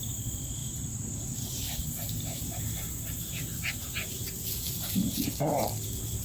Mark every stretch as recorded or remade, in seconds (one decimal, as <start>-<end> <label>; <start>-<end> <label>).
0.0-6.2 recorded